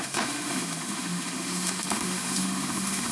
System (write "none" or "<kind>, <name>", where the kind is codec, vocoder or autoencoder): autoencoder, DAC-VAE